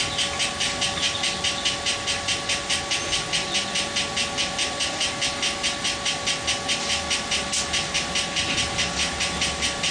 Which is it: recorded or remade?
recorded